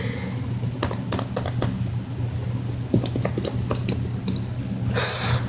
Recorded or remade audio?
recorded